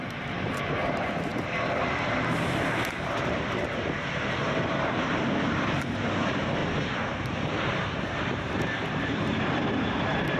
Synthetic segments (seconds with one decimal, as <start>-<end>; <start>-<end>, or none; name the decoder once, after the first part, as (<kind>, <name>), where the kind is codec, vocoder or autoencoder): 0.0-6.6 (vocoder, BigVGAN v2); 8.4-10.4